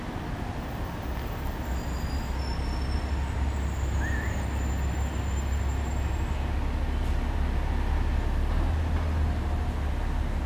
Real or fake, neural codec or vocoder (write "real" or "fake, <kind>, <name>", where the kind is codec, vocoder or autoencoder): real